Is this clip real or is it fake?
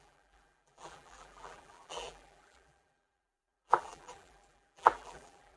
fake